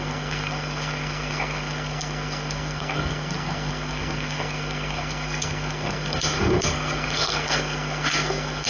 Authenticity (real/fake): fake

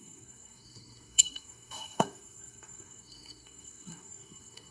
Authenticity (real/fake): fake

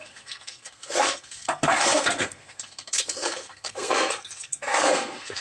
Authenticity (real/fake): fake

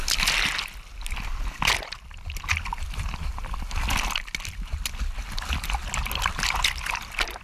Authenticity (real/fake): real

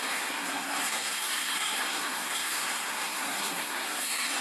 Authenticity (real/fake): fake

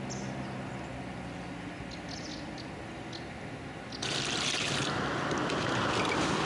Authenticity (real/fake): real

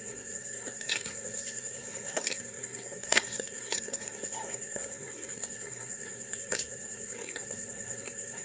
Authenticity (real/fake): fake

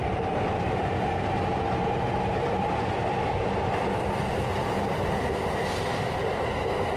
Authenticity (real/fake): real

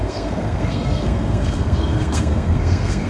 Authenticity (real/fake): fake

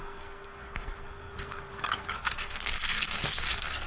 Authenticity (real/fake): fake